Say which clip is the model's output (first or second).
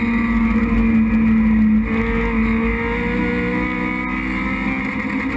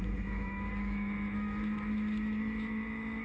second